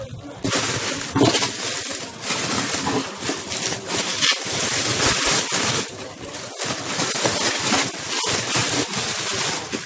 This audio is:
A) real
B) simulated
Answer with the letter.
A